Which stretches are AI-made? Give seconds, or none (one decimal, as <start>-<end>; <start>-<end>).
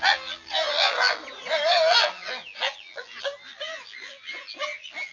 0.0-1.2; 1.9-5.1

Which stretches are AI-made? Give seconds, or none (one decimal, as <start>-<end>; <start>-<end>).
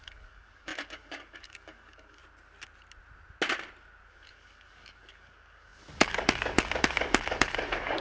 0.0-2.2; 4.1-8.0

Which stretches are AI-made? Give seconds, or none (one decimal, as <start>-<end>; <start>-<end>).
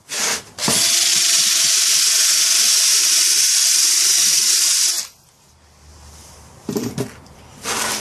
5.9-6.9